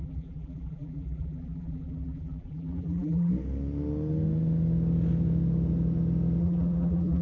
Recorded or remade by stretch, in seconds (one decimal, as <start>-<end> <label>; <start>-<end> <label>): 0.0-3.3 remade; 3.3-6.4 recorded; 6.4-7.2 remade